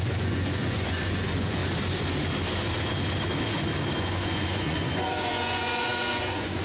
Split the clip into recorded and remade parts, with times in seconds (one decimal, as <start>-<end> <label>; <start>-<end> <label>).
0.0-1.6 remade; 1.6-4.0 recorded; 4.0-6.6 remade